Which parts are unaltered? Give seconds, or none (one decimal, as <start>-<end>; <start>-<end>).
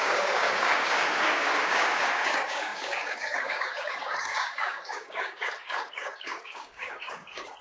none